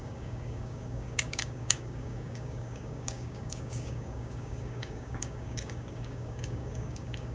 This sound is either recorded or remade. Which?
remade